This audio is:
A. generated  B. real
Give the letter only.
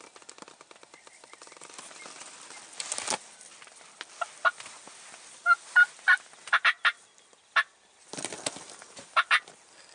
B